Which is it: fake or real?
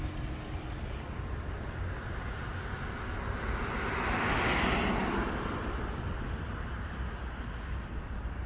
real